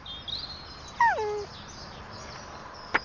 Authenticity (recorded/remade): recorded